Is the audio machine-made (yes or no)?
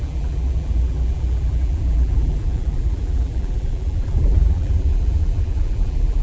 yes